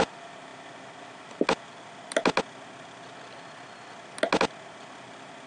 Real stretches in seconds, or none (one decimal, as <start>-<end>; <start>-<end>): 0.0-5.5